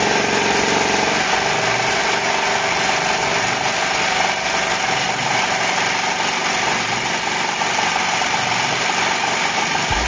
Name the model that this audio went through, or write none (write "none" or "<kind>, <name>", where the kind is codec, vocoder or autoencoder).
none